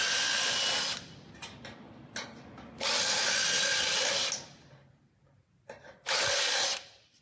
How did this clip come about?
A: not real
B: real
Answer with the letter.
B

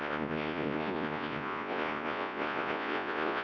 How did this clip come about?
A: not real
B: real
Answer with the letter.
A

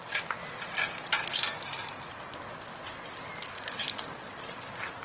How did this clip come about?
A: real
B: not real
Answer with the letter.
A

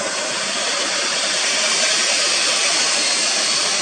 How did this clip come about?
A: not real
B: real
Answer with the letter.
B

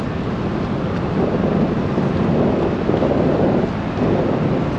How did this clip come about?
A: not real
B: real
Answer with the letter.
B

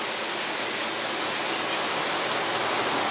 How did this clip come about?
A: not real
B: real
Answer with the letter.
B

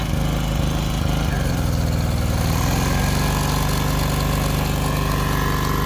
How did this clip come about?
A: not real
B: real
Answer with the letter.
B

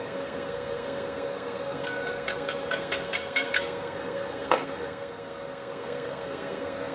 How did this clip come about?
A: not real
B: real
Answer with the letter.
A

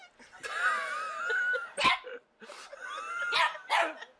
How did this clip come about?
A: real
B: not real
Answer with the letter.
A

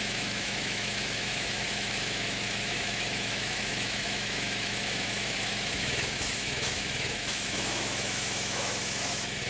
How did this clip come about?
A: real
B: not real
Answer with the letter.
B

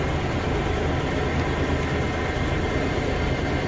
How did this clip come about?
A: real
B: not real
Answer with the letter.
A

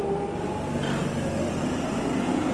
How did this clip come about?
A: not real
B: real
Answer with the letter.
B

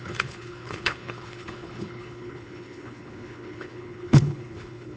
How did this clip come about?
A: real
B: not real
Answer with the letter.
B